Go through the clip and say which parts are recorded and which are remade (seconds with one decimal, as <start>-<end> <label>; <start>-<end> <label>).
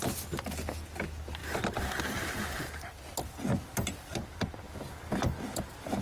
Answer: 0.0-6.0 recorded